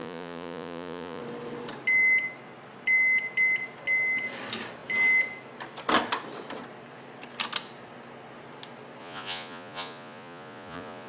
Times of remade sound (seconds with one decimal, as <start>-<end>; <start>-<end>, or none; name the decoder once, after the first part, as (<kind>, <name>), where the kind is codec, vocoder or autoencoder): 0.0-1.2 (vocoder, Vocos); 9.0-11.1